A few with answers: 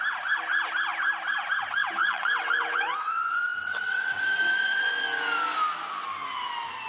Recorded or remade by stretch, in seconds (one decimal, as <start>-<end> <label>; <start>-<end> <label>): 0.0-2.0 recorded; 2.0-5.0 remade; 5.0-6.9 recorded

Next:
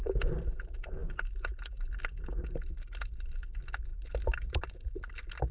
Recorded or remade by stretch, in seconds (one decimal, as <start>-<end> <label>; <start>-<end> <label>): 0.0-3.9 recorded; 3.9-5.1 remade; 5.1-5.5 recorded

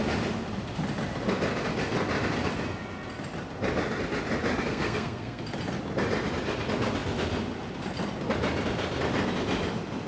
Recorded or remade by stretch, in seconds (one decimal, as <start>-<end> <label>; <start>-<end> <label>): 0.0-4.7 recorded; 4.7-5.4 remade; 5.4-10.1 recorded